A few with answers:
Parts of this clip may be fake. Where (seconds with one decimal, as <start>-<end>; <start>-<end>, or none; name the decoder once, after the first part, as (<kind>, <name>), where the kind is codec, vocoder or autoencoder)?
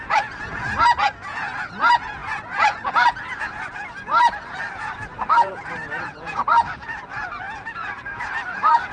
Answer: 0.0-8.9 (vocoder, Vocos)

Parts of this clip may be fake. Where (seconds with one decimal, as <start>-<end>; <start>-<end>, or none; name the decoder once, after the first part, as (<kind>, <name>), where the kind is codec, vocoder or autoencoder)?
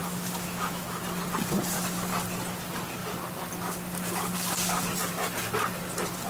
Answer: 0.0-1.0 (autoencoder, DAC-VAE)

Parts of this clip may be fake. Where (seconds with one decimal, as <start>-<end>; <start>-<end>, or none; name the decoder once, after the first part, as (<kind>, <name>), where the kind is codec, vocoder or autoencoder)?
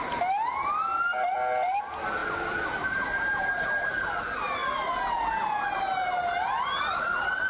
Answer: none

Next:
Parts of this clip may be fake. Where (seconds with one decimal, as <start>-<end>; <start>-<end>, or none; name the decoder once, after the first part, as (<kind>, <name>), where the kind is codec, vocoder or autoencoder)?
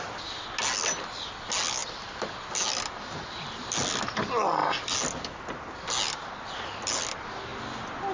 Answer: none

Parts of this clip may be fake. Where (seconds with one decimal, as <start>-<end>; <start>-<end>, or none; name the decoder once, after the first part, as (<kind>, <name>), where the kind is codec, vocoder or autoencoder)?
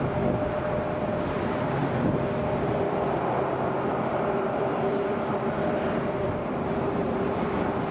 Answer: 1.8-6.5 (vocoder, BigVGAN v2)